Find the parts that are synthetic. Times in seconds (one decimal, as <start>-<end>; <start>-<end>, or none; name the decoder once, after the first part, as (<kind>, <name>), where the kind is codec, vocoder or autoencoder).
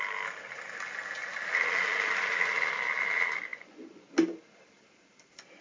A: 3.5-4.1 (vocoder, Vocos)